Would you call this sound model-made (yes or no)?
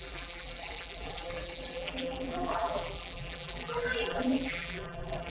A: yes